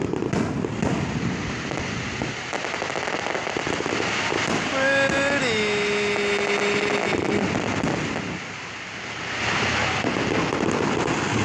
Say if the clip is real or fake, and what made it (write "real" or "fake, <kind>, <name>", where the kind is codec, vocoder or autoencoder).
real